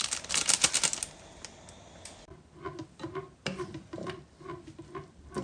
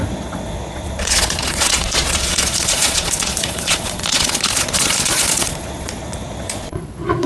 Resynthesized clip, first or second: second